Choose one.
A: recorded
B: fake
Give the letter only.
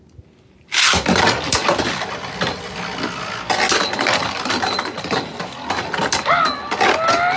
A